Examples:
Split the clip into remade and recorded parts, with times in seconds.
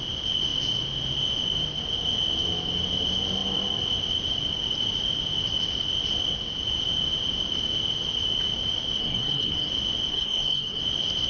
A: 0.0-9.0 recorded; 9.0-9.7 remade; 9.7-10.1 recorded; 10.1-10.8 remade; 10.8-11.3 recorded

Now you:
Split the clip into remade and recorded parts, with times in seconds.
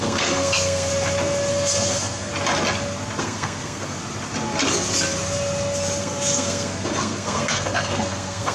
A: 0.0-0.9 remade; 0.9-1.5 recorded; 1.5-2.3 remade; 2.3-3.2 recorded; 3.2-4.0 remade; 4.0-6.0 recorded; 6.0-8.5 remade